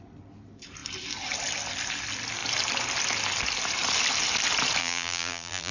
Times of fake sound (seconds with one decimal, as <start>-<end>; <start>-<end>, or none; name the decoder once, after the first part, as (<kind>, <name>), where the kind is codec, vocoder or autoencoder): 4.8-5.7 (vocoder, BigVGAN v2)